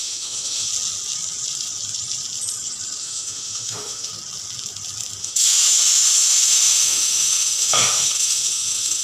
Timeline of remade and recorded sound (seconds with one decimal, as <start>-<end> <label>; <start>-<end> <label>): 0.0-0.7 remade; 0.7-3.0 recorded; 3.0-4.1 remade; 4.1-5.2 recorded; 5.2-9.0 remade